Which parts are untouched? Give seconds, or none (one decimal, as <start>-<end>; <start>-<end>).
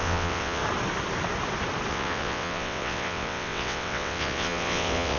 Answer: 0.6-1.9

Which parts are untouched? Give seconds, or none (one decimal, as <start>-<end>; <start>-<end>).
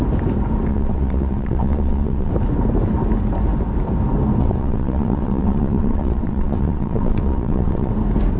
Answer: 0.0-0.7; 2.3-4.4; 7.9-8.4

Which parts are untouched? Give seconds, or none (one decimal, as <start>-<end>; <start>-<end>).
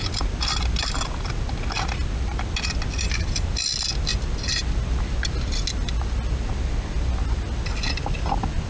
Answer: 0.0-8.7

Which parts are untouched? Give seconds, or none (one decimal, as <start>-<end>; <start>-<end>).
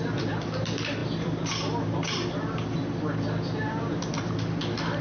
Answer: 0.0-5.0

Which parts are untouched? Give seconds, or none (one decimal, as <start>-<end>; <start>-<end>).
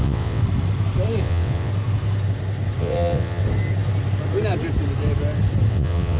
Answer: 0.4-1.2; 1.7-2.8; 3.4-5.7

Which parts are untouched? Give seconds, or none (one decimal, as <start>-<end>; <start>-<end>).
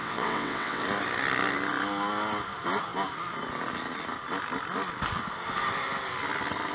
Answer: 0.8-6.7